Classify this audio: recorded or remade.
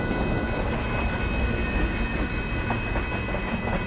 recorded